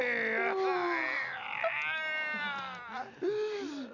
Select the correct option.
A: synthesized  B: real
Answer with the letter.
B